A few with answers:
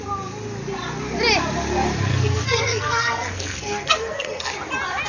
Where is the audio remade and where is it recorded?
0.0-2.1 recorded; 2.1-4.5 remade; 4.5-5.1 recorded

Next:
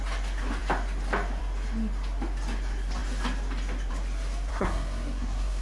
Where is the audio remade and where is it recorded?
0.0-4.5 recorded; 4.5-5.6 remade

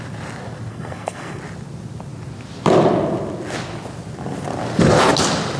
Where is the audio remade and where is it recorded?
0.0-0.7 recorded; 0.7-1.4 remade; 1.4-5.6 recorded

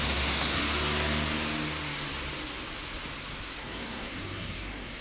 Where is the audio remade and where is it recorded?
0.0-0.6 remade; 0.6-3.6 recorded; 3.6-5.0 remade

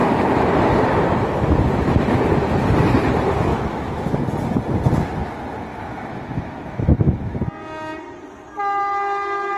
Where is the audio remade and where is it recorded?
0.0-3.5 recorded; 3.5-4.2 remade; 4.2-5.7 recorded; 5.7-7.4 remade; 7.4-9.6 recorded